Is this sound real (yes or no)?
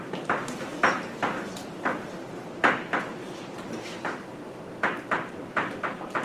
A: no